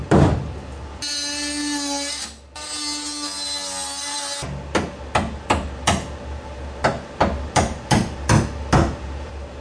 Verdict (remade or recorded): recorded